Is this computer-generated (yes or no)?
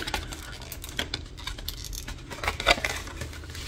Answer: no